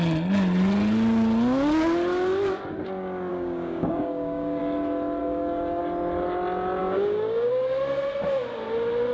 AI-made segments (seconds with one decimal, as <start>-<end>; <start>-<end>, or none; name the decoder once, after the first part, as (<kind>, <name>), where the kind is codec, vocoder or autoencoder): 3.3-4.6 (codec, DAC); 5.2-5.8; 6.8-7.5